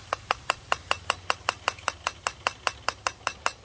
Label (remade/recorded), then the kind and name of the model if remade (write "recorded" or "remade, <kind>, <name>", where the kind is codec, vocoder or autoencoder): recorded